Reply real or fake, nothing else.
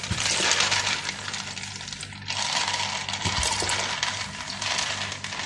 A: real